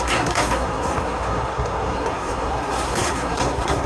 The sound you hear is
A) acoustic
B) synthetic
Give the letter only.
B